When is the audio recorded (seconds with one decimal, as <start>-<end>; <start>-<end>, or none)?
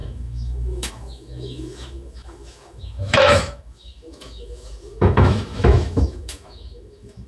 none